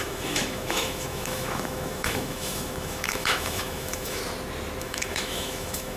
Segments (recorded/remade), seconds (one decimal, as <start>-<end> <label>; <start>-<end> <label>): 0.0-4.2 remade; 4.2-4.8 recorded; 4.8-6.0 remade